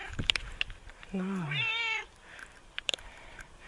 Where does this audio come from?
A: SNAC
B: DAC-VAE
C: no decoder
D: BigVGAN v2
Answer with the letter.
D